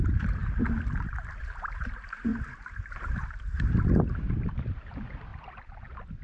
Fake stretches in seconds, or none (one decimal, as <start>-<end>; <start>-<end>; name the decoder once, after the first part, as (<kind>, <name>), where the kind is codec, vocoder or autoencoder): 0.0-0.4 (vocoder, BigVGAN v2); 1.4-2.3; 4.7-5.3